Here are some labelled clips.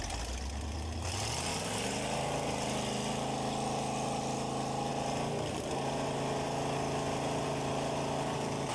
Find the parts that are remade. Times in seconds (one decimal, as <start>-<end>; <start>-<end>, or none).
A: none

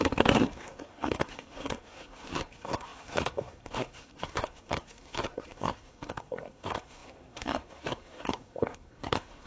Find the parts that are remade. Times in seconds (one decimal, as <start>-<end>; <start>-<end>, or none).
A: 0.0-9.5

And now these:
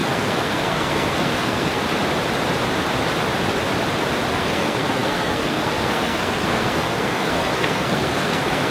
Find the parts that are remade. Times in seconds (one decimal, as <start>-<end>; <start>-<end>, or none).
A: 0.0-1.8; 4.3-8.7